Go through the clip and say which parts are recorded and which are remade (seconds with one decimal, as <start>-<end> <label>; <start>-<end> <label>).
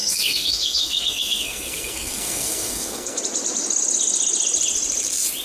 0.0-3.2 remade; 3.2-5.4 recorded